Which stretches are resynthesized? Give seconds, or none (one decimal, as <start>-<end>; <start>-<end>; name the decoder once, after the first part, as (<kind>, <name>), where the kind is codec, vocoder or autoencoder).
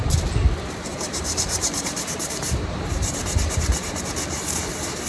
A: 0.9-4.0 (vocoder, BigVGAN v2)